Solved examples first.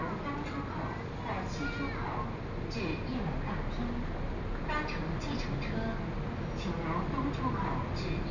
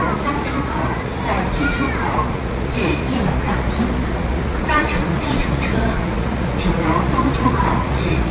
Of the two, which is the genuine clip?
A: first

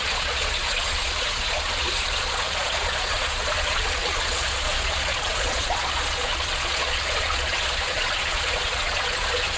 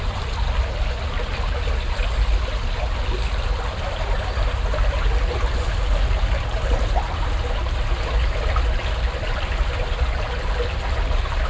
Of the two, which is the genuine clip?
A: second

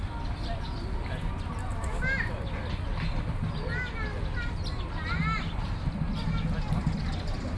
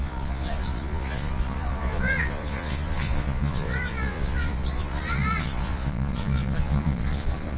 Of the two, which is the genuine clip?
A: first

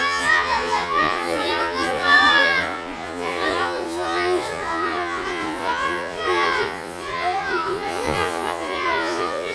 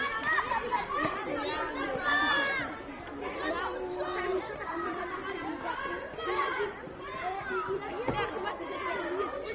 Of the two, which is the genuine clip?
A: second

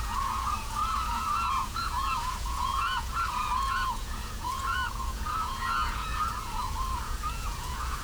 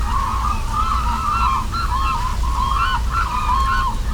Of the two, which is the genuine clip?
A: second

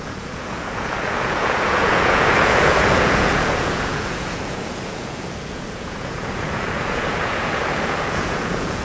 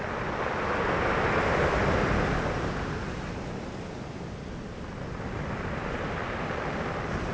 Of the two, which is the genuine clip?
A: second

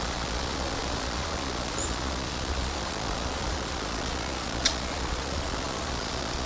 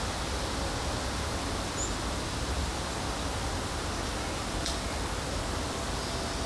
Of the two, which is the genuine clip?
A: second